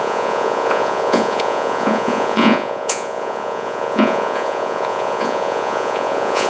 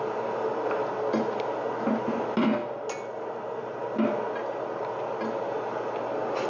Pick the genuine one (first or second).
second